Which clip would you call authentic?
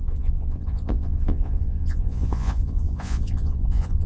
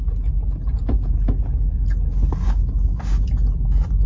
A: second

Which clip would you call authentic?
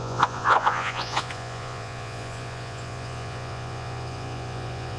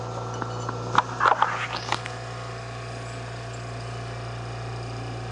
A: second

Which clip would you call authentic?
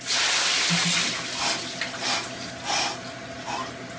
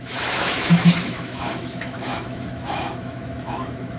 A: first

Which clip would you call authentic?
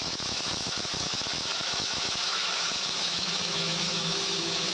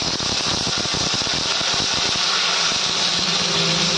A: second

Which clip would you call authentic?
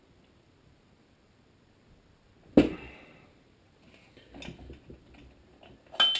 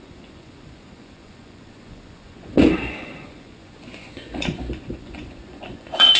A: first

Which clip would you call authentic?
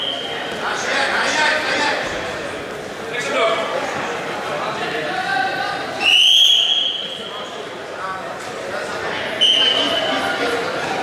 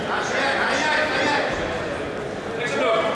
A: second